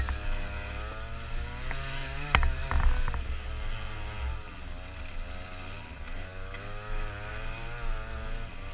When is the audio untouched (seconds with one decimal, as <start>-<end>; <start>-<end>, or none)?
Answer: 0.0-8.7